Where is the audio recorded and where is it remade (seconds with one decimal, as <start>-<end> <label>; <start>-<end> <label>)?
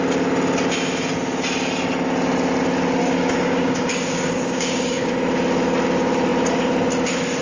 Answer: 0.0-3.0 recorded; 3.0-5.1 remade; 5.1-7.4 recorded